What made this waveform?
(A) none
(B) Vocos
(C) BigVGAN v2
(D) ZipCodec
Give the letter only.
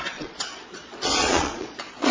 B